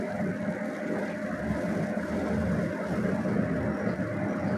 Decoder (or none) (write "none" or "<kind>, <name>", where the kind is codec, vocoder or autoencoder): none